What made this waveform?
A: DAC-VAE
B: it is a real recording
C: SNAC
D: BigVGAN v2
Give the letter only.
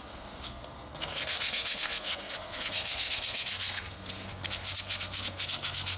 C